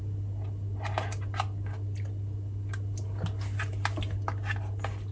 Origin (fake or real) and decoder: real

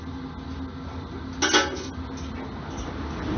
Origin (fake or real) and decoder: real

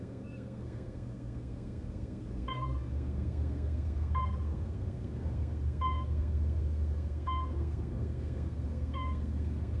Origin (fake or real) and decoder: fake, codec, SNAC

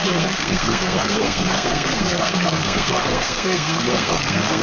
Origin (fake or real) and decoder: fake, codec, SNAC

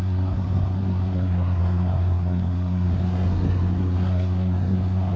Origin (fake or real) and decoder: fake, codec, SNAC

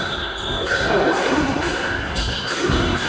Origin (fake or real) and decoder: fake, codec, SNAC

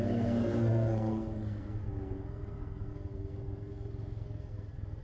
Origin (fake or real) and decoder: fake, codec, SNAC